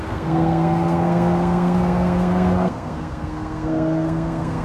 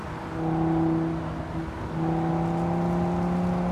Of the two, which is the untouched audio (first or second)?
second